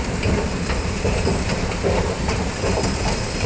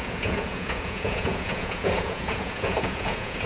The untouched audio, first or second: first